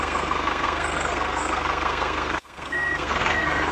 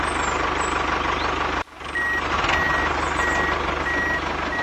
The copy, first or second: first